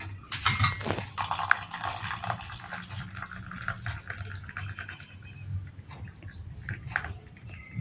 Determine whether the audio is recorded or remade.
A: recorded